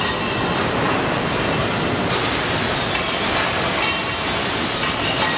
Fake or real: fake